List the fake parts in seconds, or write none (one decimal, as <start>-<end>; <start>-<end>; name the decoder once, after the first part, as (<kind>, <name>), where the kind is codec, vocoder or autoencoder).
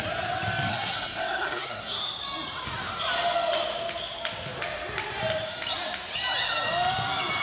0.7-2.0 (codec, SNAC)